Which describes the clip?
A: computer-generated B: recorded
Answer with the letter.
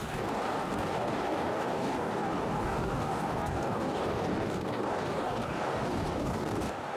A